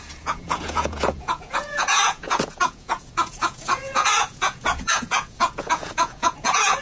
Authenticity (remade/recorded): remade